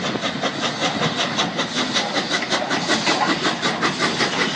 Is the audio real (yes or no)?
yes